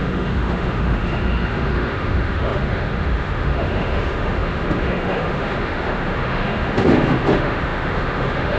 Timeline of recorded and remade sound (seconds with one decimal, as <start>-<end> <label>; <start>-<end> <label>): 0.0-8.6 remade

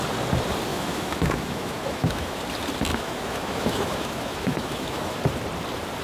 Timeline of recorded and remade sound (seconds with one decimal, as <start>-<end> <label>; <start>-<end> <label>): 0.0-0.7 recorded; 0.7-2.4 remade; 2.4-2.9 recorded; 2.9-5.2 remade; 5.2-6.0 recorded

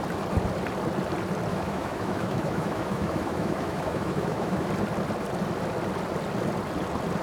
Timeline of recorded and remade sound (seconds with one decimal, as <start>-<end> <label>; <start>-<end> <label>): 0.0-1.5 recorded; 1.5-4.7 remade; 4.7-7.2 recorded

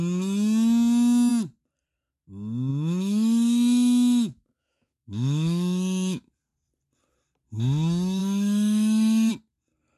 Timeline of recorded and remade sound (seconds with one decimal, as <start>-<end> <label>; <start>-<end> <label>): 0.0-2.7 recorded; 2.7-6.3 remade; 6.3-8.2 recorded; 8.2-9.3 remade; 9.3-10.0 recorded

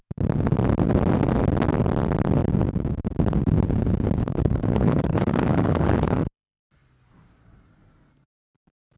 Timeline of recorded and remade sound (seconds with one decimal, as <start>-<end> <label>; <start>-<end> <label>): 0.0-4.2 recorded; 4.2-6.6 remade; 6.6-9.0 recorded

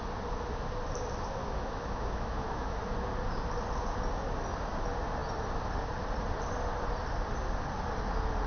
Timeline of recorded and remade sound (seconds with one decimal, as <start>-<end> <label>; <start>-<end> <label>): 0.0-1.4 recorded; 1.4-2.8 remade; 2.8-8.5 recorded

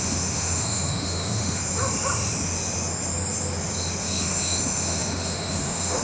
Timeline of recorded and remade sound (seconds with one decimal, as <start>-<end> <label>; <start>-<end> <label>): 0.0-1.6 remade; 1.6-4.0 recorded; 4.0-6.0 remade